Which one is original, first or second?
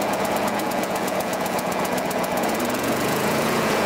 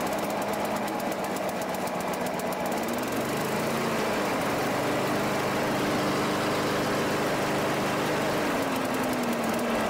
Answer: second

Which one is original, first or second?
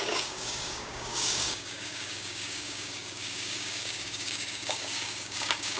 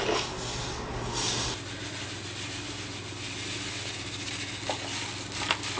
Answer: second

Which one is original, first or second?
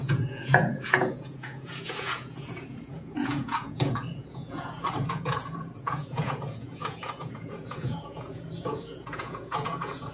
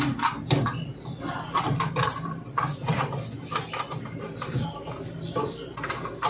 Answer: second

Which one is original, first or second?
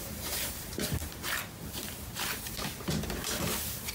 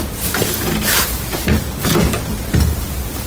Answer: second